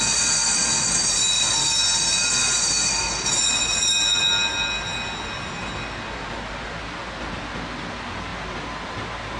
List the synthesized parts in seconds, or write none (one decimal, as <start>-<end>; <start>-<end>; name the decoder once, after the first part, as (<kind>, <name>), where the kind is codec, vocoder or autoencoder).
none